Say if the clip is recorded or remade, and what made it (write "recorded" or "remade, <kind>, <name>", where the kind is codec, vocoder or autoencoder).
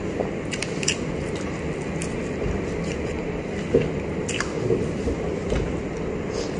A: recorded